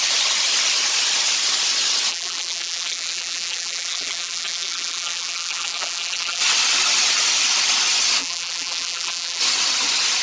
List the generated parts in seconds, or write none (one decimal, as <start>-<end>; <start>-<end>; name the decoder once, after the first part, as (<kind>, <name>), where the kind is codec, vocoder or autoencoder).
2.1-6.4 (vocoder, BigVGAN v2); 8.2-9.4